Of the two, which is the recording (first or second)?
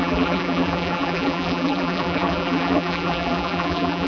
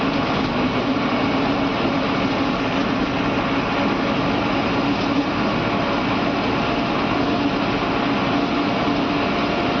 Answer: second